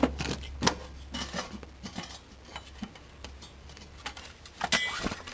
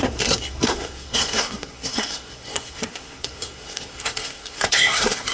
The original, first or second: first